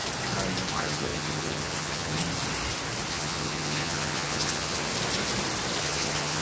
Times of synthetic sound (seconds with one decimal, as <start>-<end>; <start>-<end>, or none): 0.7-2.2; 3.1-4.9; 5.8-6.4